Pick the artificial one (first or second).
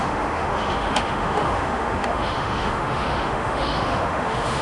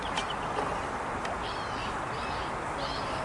first